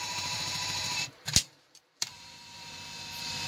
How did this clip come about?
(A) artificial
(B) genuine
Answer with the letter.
A